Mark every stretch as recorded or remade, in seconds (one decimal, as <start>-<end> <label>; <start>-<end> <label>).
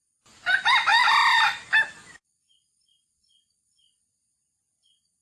0.0-0.9 recorded; 0.9-4.0 remade; 4.0-5.2 recorded